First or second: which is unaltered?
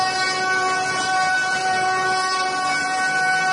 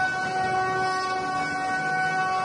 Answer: second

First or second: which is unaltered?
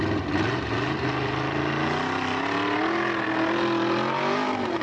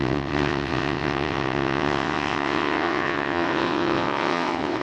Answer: first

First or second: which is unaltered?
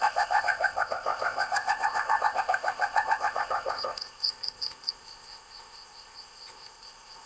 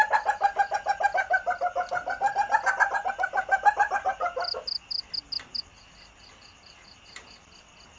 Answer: second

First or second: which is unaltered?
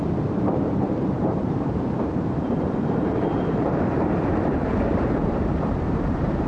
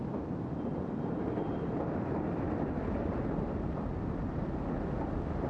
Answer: second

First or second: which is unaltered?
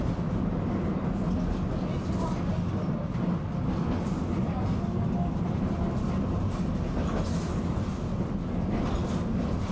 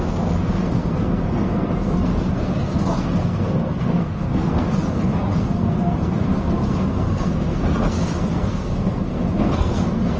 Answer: first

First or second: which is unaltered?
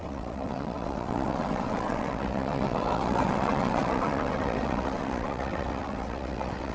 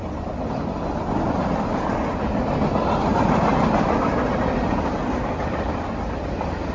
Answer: second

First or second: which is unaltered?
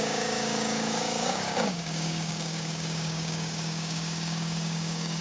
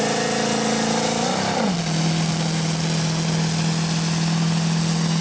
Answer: second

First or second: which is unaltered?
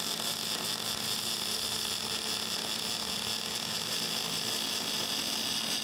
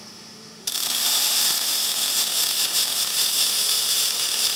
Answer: first